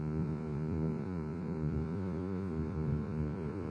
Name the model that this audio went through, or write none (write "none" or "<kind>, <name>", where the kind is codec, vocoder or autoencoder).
vocoder, Vocos